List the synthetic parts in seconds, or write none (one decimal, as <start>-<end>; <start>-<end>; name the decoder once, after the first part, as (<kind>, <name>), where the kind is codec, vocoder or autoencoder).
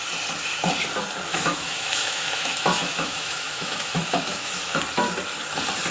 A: 1.3-4.8 (autoencoder, DAC-VAE)